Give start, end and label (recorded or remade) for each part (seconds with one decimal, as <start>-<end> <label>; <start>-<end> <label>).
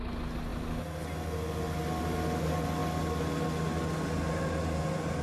0.0-5.2 recorded